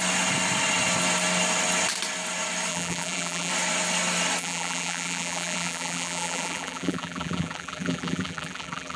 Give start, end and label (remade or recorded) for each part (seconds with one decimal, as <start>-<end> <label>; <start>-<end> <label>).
0.0-2.7 recorded; 2.7-3.5 remade; 3.5-4.4 recorded; 4.4-9.0 remade

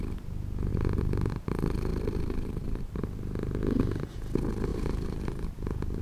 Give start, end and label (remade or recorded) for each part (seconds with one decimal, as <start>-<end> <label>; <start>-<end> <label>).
0.0-0.7 recorded; 0.7-1.3 remade; 1.3-1.9 recorded; 1.9-3.0 remade; 3.0-4.7 recorded; 4.7-6.0 remade